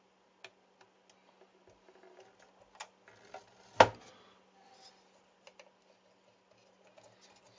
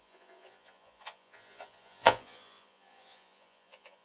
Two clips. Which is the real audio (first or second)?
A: first